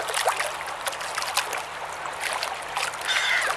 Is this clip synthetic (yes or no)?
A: no